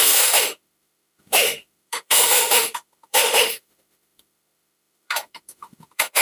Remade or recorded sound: remade